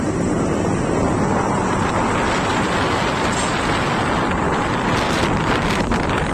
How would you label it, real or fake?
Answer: real